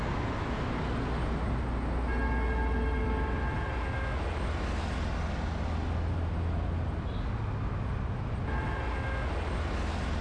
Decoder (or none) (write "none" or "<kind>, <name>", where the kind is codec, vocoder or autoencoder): none